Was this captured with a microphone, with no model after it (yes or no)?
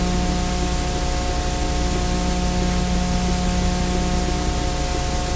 yes